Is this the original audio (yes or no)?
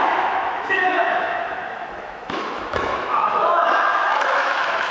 no